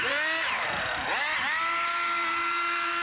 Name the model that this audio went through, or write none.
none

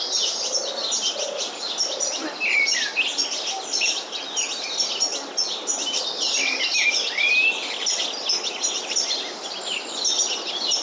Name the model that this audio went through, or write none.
none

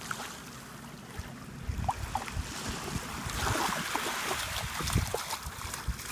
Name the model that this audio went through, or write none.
none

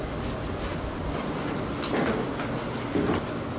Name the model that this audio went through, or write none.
none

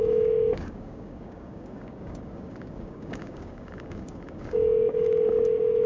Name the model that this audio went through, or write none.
codec, DAC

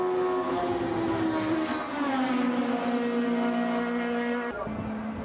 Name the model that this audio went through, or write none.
none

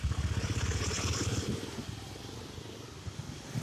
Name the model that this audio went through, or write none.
none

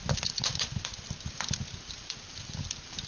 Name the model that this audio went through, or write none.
none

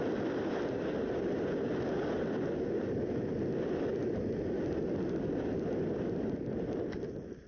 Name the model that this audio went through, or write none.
none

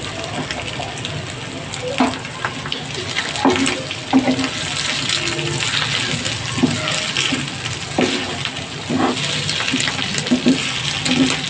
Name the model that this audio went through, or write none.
none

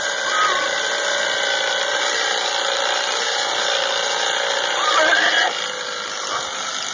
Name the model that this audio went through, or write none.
none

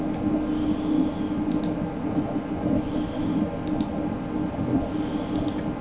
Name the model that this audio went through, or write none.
none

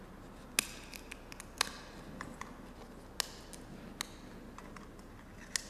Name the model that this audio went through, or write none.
none